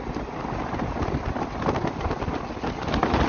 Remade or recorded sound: recorded